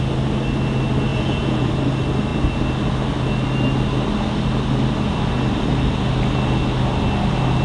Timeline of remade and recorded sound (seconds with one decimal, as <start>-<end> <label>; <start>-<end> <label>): 0.0-1.1 recorded; 1.1-1.7 remade; 1.7-7.6 recorded